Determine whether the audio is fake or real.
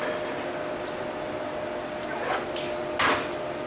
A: real